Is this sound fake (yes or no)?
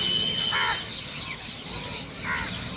no